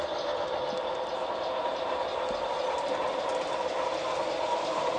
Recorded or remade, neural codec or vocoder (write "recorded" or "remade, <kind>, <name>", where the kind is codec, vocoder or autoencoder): recorded